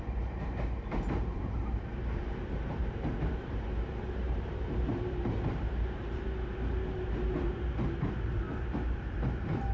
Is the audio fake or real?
fake